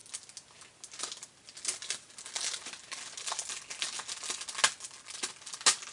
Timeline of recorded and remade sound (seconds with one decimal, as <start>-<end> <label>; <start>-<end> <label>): 0.0-5.9 recorded